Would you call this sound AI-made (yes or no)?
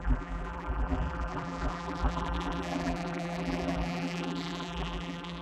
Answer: yes